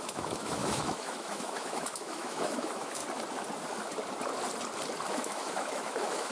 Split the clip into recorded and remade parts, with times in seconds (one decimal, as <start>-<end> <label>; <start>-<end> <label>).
0.0-3.0 remade; 3.0-5.1 recorded; 5.1-6.3 remade